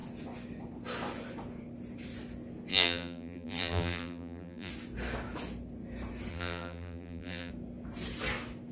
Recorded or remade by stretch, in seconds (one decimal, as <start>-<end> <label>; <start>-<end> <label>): 0.0-2.7 recorded; 2.7-4.7 remade; 4.7-6.3 recorded; 6.3-7.5 remade; 7.5-8.7 recorded